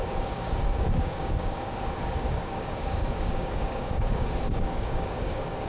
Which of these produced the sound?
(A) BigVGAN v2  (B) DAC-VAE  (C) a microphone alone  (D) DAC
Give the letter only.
D